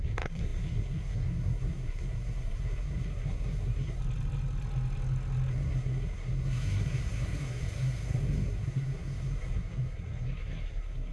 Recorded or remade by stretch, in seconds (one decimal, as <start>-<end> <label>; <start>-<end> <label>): 0.0-4.0 remade; 4.0-5.5 recorded; 5.5-11.1 remade